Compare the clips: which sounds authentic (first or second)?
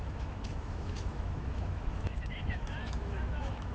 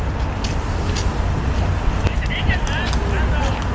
second